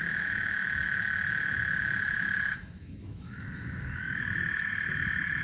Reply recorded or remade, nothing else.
remade